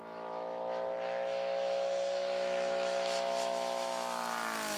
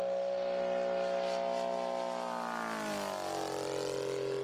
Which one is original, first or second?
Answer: second